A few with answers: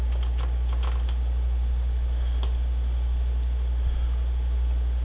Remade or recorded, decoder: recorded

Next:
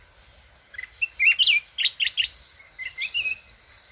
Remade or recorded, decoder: recorded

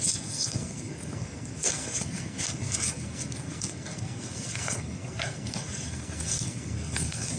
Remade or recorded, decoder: remade, codec, SNAC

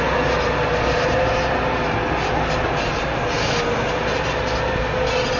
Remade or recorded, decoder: recorded